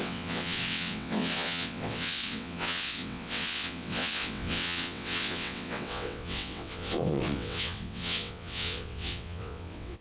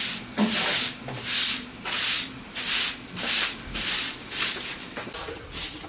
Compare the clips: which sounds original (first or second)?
second